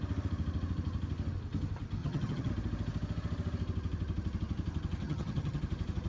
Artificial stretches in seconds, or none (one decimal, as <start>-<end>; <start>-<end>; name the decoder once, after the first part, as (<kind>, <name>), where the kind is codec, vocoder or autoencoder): 2.0-2.5 (vocoder, HiFi-GAN); 5.0-5.6